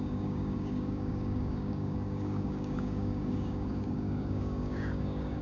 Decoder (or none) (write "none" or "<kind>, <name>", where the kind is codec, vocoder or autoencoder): codec, DAC